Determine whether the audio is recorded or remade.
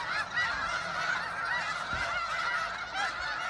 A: recorded